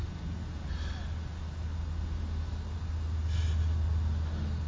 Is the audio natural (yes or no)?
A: yes